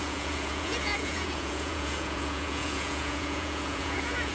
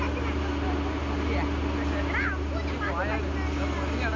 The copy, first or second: first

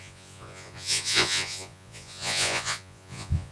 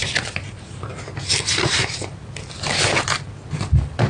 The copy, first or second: first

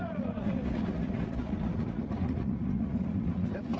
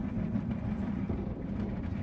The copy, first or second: first